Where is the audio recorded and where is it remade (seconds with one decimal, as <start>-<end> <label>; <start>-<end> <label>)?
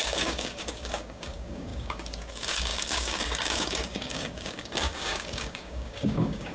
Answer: 0.0-6.5 remade